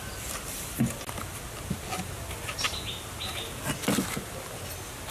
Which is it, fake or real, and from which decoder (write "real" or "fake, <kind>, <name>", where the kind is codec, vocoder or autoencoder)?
real